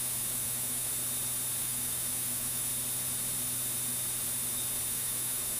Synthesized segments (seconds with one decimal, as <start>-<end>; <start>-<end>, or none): 0.0-0.9; 1.6-2.7; 4.9-5.6